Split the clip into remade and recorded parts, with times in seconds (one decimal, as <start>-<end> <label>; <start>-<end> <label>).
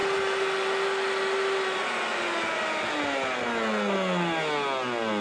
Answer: 0.0-5.2 recorded